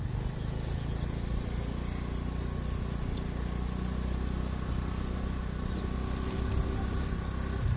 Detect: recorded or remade recorded